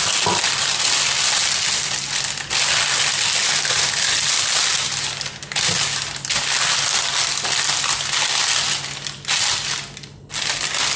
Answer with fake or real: real